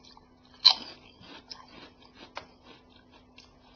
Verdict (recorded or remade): recorded